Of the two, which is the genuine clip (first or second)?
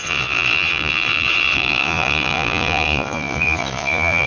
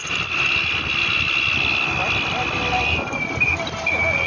second